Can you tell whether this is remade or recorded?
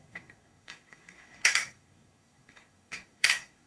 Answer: remade